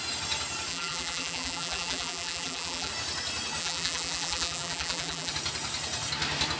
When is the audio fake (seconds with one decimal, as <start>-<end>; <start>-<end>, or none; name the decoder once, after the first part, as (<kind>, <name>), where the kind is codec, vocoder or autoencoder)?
0.7-2.9 (vocoder, BigVGAN v2); 3.6-5.3